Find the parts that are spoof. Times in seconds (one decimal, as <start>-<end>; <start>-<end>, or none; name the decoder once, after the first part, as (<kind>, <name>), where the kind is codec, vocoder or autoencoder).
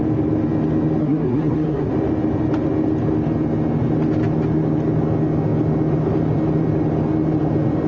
1.0-1.9 (codec, SNAC)